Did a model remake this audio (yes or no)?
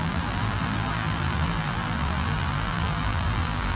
yes